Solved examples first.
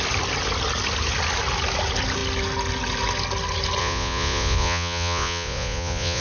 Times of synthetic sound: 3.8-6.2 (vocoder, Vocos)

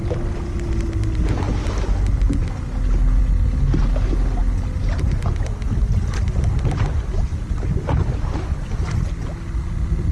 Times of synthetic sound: none

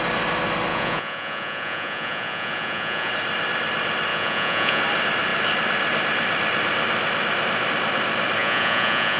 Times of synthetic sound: 0.7-3.1 (vocoder, Vocos); 4.1-4.8; 8.4-9.2

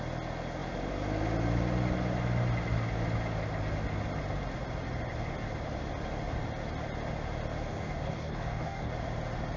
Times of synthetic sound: 7.7-8.9 (codec, DAC)

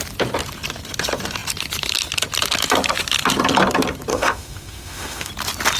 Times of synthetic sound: 4.1-5.3 (autoencoder, DAC-VAE)

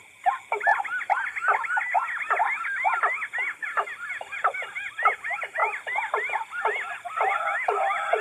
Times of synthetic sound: none

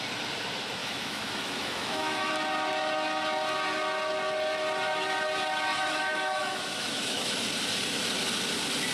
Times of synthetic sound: 0.8-2.3 (autoencoder, DAC-VAE); 5.7-7.4

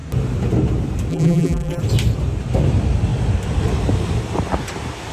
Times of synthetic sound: 1.1-1.8 (vocoder, BigVGAN v2)